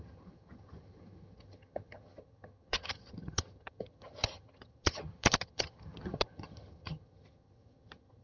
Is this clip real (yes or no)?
no